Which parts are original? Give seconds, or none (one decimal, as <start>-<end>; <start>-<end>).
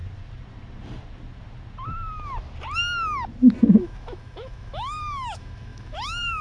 0.0-3.8